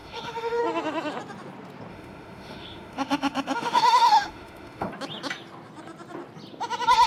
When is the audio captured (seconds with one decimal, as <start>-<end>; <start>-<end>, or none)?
0.6-1.9; 4.9-7.1